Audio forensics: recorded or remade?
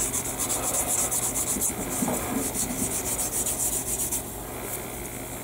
recorded